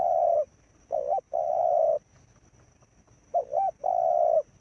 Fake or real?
fake